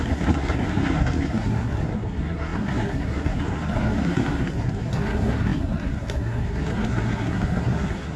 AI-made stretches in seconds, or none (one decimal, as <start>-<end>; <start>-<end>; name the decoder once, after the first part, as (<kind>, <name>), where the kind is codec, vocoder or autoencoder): 0.0-8.2 (codec, SNAC)